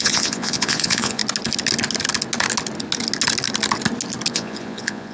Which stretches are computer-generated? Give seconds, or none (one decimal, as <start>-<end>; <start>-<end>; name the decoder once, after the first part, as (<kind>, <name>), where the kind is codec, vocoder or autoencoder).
0.0-1.2 (vocoder, Vocos); 4.3-5.1